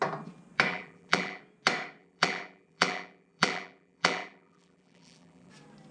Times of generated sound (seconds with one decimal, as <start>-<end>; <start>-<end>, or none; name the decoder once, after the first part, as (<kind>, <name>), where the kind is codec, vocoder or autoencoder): 0.7-1.4 (vocoder, BigVGAN v2); 2.0-5.5